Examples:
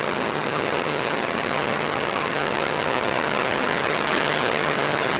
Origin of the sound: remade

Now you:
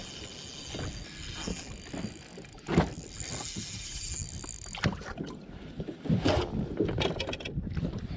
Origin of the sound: recorded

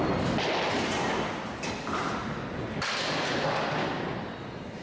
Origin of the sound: recorded